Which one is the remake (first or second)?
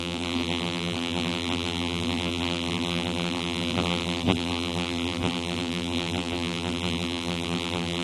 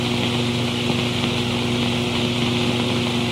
first